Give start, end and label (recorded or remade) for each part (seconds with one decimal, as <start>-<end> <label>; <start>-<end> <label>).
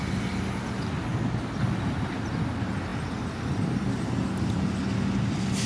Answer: 0.0-5.7 recorded